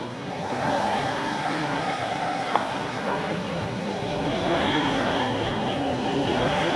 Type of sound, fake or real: fake